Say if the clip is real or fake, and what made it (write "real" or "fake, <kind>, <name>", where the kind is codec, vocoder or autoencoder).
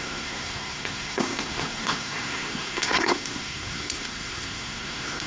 fake, codec, SNAC